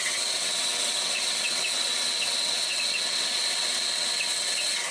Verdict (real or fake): fake